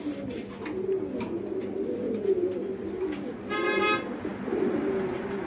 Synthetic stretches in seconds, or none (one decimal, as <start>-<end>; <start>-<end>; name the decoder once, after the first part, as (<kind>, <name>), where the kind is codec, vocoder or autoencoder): 4.3-5.5 (vocoder, BigVGAN v2)